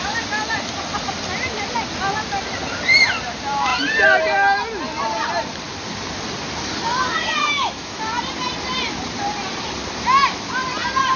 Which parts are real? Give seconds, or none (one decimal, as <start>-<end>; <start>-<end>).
0.0-7.4; 8.0-11.2